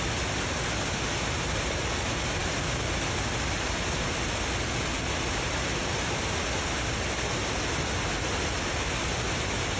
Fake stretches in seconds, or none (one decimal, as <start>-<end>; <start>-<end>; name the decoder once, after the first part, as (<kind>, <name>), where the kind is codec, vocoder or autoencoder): none